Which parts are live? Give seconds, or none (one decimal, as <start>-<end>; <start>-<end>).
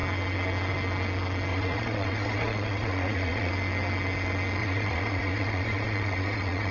0.0-1.5; 3.5-4.6